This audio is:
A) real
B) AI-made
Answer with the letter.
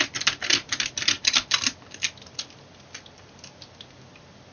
B